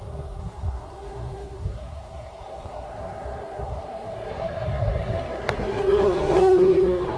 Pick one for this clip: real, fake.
fake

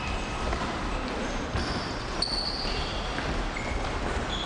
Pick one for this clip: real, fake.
real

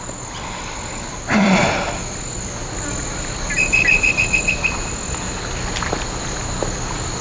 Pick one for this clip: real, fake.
real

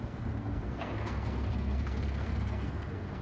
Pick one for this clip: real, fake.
fake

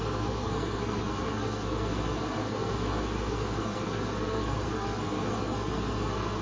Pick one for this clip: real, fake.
fake